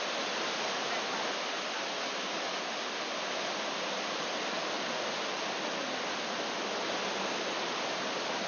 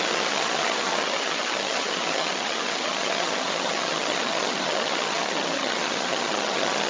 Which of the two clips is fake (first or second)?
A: second